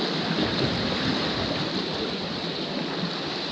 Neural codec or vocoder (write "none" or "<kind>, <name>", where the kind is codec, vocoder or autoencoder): none